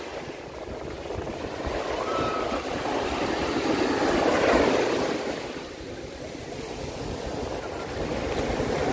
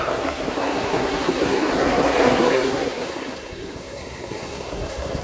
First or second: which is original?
first